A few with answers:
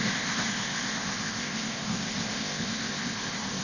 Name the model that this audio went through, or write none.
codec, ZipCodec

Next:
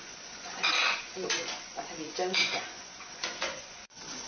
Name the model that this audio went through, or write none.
vocoder, Vocos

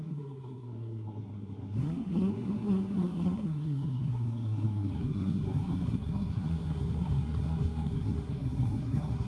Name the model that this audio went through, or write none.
codec, SNAC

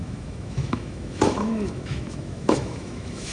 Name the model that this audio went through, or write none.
autoencoder, DAC-VAE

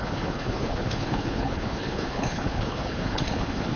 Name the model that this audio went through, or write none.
codec, HILCodec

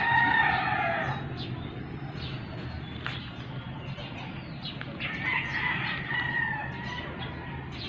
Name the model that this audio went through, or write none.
none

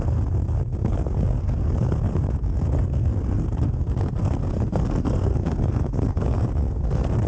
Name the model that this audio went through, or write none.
codec, SNAC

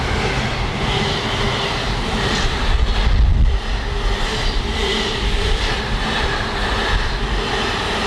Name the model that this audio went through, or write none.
none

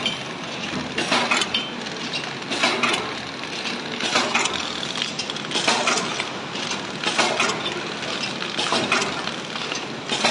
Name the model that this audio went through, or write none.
none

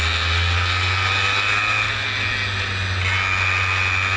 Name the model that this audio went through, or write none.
none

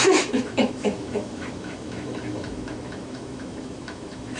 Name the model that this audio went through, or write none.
autoencoder, DAC-VAE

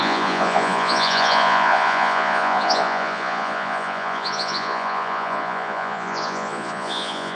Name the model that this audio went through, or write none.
vocoder, Vocos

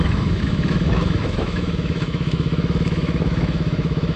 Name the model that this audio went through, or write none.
autoencoder, DAC-VAE